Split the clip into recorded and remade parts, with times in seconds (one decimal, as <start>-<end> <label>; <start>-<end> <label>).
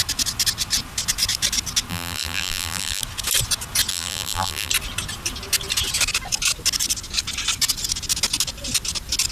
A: 0.0-1.9 recorded; 1.9-3.0 remade; 3.0-3.9 recorded; 3.9-4.7 remade; 4.7-9.3 recorded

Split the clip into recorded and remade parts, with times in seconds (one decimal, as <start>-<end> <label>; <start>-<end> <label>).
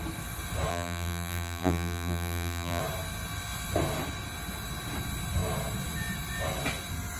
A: 0.0-0.7 recorded; 0.7-2.8 remade; 2.8-7.2 recorded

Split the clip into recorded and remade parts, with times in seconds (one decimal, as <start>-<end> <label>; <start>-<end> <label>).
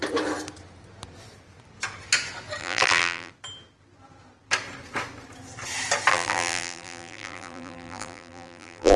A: 0.0-2.6 recorded; 2.6-3.3 remade; 3.3-6.1 recorded; 6.1-9.0 remade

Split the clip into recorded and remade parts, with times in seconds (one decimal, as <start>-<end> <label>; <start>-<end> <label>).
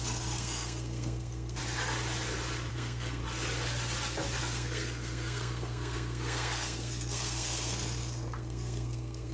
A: 0.0-1.6 remade; 1.6-2.7 recorded; 2.7-3.2 remade; 3.2-4.4 recorded; 4.4-9.3 remade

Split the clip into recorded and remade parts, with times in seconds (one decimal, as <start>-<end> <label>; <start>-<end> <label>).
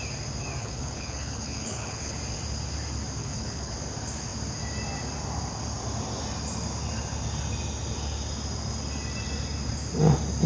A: 0.0-0.6 recorded; 0.6-2.2 remade; 2.2-3.2 recorded; 3.2-3.7 remade; 3.7-10.5 recorded